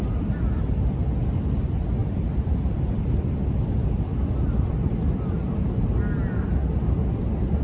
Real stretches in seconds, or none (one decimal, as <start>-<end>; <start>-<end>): 0.0-2.0; 5.9-7.6